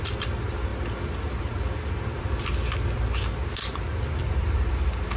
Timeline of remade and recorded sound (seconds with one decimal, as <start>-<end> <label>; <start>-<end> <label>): 0.0-5.2 recorded